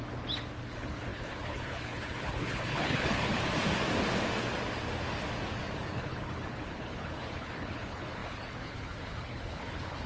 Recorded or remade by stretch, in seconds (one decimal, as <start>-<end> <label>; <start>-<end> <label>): 0.0-0.6 recorded; 0.6-3.4 remade; 3.4-5.9 recorded; 5.9-10.1 remade